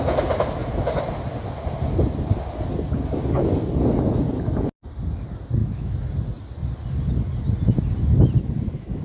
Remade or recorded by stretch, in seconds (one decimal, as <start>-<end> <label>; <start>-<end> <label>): 0.0-5.6 recorded; 5.6-6.1 remade; 6.1-9.0 recorded